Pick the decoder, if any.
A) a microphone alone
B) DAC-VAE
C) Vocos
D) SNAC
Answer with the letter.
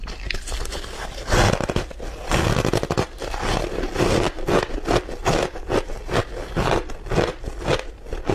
A